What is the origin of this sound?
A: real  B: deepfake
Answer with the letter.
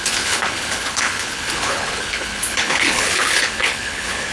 B